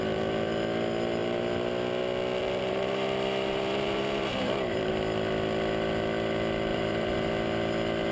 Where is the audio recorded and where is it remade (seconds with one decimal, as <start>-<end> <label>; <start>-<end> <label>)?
0.0-2.4 recorded; 2.4-4.9 remade; 4.9-6.7 recorded; 6.7-7.3 remade; 7.3-8.1 recorded